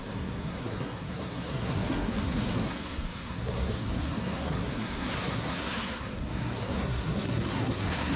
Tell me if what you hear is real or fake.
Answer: fake